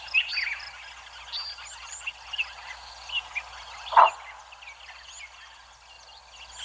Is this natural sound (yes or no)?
yes